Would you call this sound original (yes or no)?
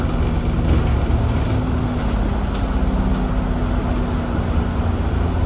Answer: yes